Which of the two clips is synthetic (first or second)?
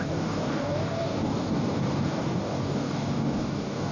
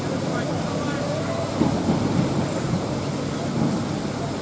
first